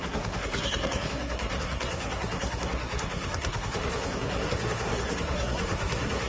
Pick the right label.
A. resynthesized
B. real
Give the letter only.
A